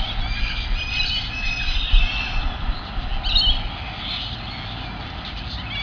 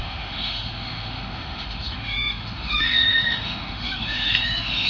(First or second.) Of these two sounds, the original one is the first